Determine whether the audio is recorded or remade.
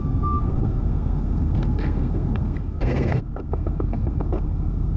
remade